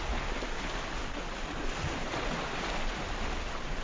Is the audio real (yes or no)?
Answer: yes